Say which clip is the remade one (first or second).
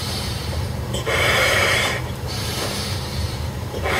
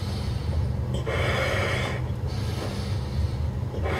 first